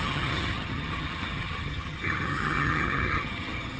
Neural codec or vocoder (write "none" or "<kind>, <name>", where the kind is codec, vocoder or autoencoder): vocoder, HiFi-GAN